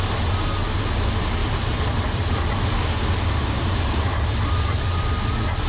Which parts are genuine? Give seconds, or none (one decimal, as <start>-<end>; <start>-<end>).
0.0-1.4; 4.8-5.7